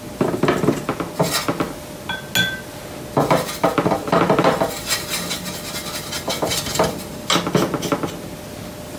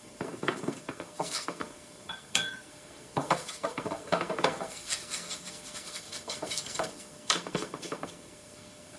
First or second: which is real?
first